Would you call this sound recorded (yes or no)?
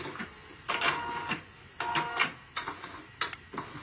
yes